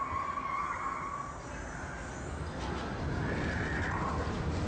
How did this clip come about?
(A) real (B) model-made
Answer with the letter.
A